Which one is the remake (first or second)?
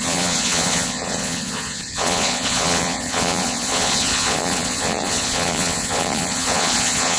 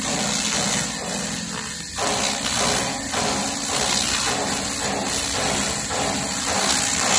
first